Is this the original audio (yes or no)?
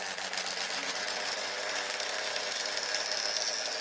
yes